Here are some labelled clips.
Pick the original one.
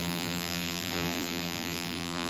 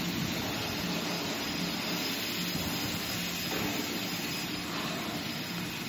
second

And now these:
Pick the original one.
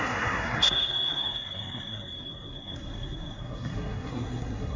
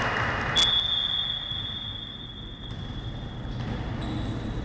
second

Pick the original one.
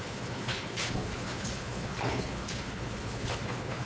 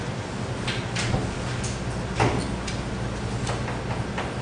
second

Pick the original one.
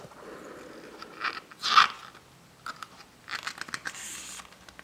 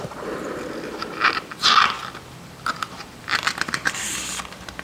first